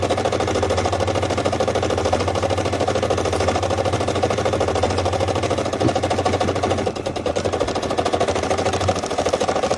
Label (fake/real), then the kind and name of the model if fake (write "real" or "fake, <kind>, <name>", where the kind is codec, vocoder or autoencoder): real